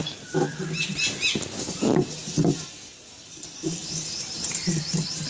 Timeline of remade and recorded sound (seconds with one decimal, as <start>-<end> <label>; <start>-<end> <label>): 0.0-5.3 recorded